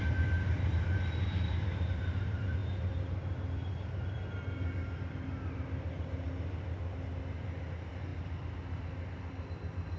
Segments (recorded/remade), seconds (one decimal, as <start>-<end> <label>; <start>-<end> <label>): 0.0-2.6 remade; 2.6-7.7 recorded; 7.7-8.1 remade; 8.1-10.0 recorded